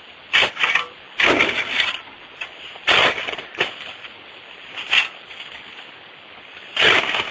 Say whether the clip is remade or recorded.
recorded